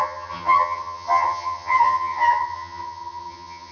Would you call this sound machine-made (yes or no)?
yes